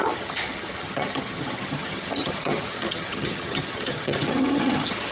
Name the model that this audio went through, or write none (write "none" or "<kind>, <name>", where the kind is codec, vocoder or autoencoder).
vocoder, HiFi-GAN